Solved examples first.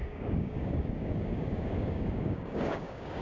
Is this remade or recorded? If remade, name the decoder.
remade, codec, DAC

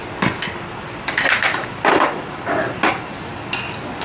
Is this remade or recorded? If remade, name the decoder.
recorded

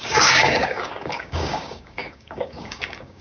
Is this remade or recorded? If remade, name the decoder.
remade, codec, DAC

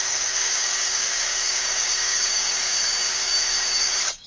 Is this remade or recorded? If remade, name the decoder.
remade, codec, DAC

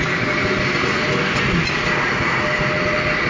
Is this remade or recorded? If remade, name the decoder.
recorded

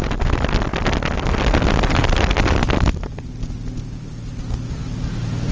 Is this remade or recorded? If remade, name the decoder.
recorded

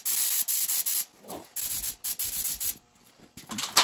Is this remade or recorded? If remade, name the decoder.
recorded